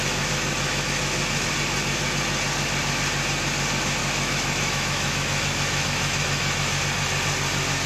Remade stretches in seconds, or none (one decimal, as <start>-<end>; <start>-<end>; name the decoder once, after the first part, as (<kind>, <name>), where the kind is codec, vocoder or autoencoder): 0.0-1.5 (autoencoder, DAC-VAE); 4.0-6.8